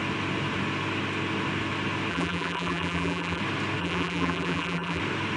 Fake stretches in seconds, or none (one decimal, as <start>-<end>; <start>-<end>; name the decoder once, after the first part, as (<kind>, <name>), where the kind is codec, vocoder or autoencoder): 2.1-3.4 (vocoder, BigVGAN v2); 3.8-5.0